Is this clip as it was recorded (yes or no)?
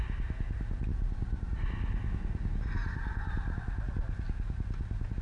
yes